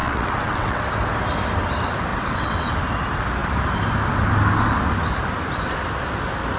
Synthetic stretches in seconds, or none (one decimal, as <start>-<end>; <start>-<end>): 0.0-0.8; 2.1-2.7